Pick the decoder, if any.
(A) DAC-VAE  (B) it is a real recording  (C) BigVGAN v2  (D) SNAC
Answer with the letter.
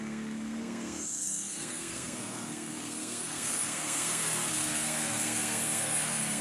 D